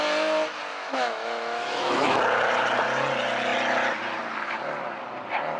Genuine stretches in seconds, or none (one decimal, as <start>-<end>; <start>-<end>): 0.0-0.7; 2.2-5.6